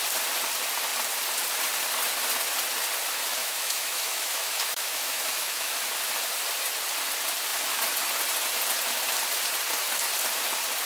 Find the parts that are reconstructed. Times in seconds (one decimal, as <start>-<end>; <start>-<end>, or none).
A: 3.4-5.8